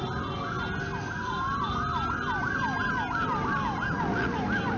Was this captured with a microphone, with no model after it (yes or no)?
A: yes